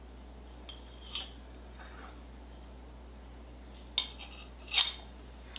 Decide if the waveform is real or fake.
real